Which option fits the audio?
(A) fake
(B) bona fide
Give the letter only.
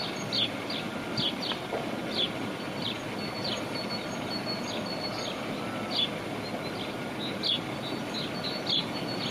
B